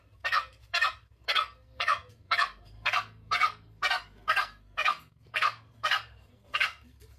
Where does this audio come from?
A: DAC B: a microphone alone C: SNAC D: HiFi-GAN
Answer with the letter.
C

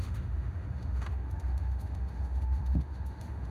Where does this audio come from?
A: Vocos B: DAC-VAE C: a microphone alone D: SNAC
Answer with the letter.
B